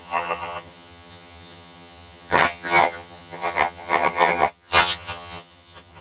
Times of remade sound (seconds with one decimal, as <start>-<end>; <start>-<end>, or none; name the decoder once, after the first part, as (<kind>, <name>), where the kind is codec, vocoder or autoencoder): 0.0-6.0 (vocoder, HiFi-GAN)

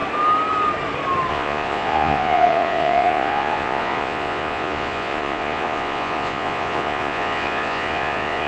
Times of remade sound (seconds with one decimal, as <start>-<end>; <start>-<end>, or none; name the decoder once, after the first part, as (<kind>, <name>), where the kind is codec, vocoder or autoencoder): 1.3-8.5 (vocoder, Vocos)

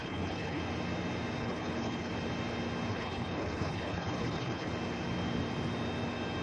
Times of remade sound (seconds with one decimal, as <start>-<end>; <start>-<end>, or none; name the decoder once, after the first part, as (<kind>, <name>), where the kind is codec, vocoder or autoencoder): 0.0-0.6 (codec, HILCodec); 1.4-2.1; 2.9-4.7

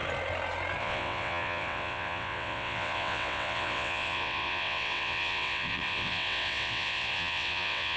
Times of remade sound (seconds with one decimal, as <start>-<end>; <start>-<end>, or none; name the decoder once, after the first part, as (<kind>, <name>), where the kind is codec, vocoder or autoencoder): 0.8-8.0 (vocoder, WaveNeXt)